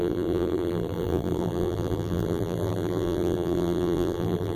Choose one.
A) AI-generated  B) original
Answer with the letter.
A